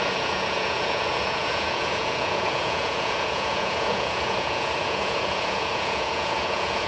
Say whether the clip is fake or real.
fake